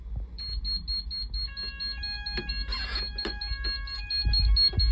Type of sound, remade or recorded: recorded